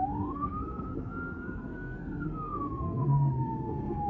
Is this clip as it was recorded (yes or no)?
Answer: no